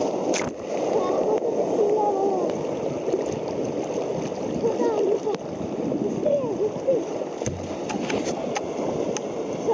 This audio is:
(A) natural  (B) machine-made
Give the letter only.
A